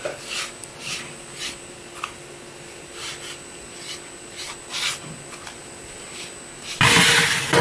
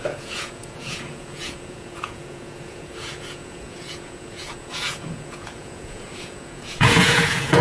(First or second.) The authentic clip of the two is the first